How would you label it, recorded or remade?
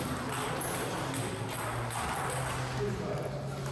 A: recorded